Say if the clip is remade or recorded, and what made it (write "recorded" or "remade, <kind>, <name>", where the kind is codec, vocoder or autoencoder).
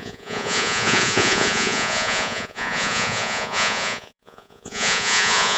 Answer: remade, vocoder, Vocos